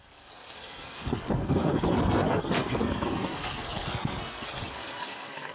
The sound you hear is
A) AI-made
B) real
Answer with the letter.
A